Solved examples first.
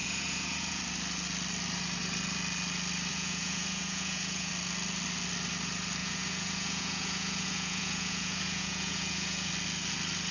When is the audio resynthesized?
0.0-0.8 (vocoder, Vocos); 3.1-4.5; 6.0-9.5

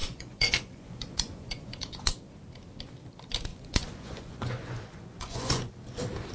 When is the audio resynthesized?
0.0-2.1 (vocoder, Vocos); 3.5-5.7

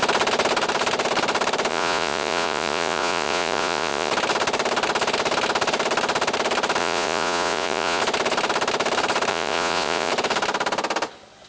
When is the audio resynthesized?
1.7-4.1 (vocoder, Vocos); 6.8-8.0; 9.3-10.1

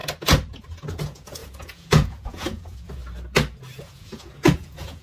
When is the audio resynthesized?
0.9-3.0 (vocoder, Vocos); 3.8-5.0

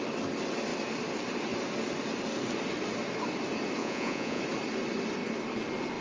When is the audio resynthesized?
3.8-4.4 (vocoder, Vocos)